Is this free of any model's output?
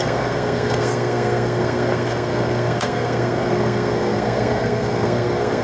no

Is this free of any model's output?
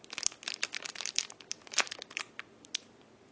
yes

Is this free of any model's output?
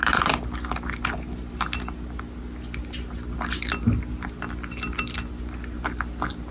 yes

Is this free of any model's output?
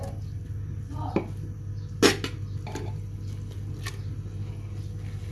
yes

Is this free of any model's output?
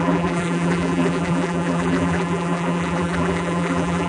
no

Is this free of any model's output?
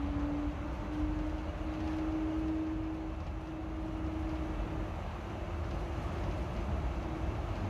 yes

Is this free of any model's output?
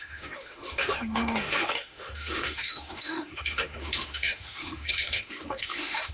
no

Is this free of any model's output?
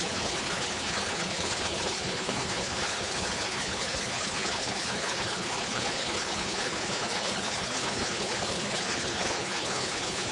no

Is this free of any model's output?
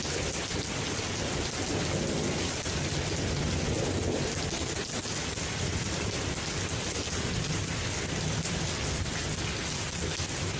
yes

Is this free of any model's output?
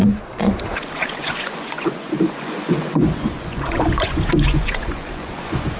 no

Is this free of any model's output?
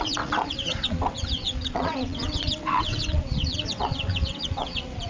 no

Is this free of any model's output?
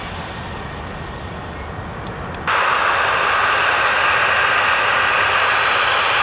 yes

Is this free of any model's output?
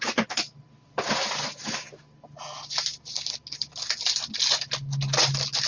yes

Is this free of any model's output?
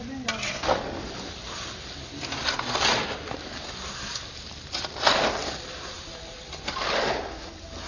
yes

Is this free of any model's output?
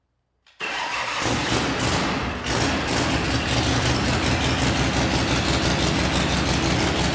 yes